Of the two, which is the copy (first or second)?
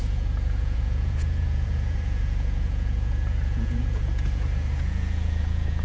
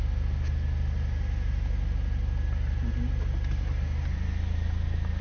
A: first